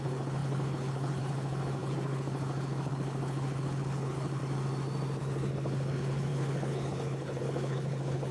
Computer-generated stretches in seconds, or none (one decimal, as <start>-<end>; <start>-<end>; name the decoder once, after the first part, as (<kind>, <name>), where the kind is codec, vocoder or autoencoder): 0.0-4.4 (codec, HILCodec); 5.2-8.3